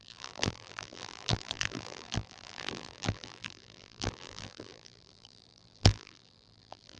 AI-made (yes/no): yes